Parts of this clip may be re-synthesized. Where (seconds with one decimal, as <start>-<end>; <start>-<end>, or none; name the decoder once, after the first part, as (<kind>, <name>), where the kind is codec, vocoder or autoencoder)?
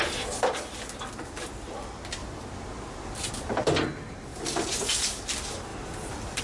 2.2-3.3 (vocoder, BigVGAN v2); 5.7-6.4